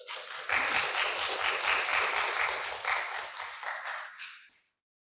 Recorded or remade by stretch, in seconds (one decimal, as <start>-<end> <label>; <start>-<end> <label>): 0.0-1.9 recorded; 1.9-2.7 remade; 2.7-5.0 recorded